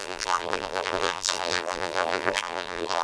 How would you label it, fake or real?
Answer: fake